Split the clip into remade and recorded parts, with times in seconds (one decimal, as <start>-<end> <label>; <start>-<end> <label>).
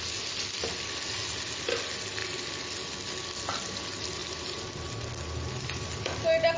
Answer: 0.0-6.6 recorded